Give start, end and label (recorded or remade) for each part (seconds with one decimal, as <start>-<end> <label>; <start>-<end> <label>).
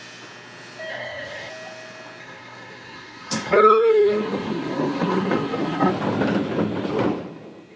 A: 0.0-0.9 recorded; 0.9-1.5 remade; 1.5-2.2 recorded; 2.2-5.9 remade; 5.9-7.8 recorded